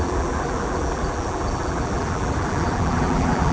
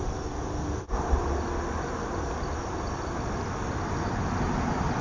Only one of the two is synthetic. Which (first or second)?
first